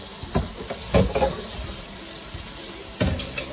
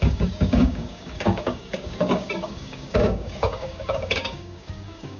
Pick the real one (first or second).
first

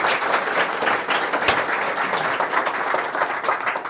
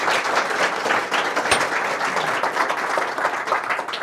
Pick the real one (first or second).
first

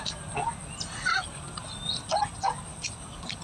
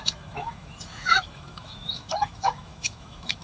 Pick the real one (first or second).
first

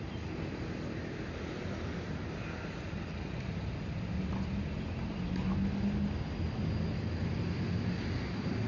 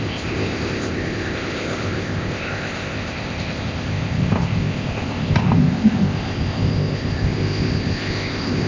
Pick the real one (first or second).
first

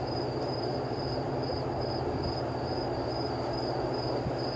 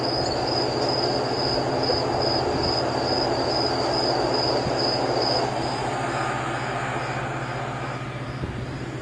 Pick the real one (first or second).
second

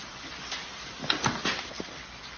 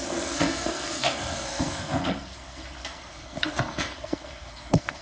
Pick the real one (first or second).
first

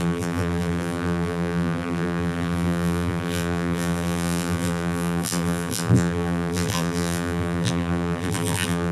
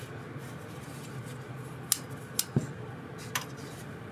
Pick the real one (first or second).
second